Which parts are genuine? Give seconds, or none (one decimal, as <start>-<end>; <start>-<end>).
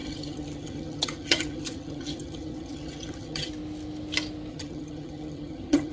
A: 3.5-4.5